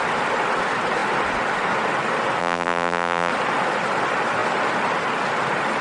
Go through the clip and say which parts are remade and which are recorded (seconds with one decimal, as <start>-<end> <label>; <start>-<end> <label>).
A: 0.0-2.4 recorded; 2.4-3.3 remade; 3.3-5.8 recorded